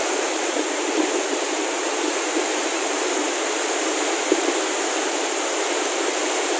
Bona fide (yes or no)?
no